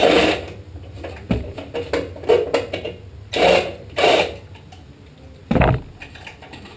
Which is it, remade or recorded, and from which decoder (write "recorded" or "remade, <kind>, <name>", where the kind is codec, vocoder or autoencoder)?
recorded